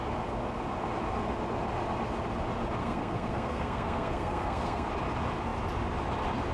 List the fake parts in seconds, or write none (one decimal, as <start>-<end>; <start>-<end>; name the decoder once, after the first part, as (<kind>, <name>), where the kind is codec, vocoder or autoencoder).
2.8-4.9 (codec, SNAC)